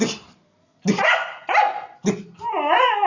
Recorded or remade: recorded